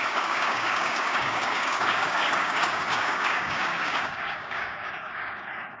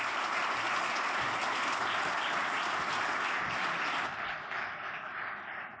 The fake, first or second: first